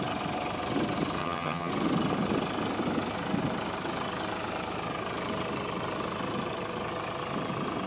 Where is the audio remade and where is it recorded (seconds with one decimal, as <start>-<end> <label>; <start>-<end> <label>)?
0.0-1.2 recorded; 1.2-1.7 remade; 1.7-7.9 recorded